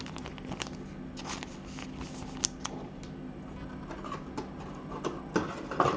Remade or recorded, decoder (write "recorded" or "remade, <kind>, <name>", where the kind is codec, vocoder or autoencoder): recorded